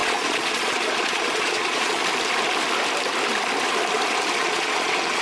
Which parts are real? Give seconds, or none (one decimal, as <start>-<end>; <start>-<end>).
2.0-4.4